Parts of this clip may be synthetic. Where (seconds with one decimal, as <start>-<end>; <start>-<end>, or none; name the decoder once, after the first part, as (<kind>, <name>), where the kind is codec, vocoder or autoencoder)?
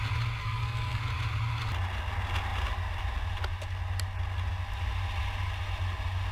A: 0.4-1.0 (codec, SNAC)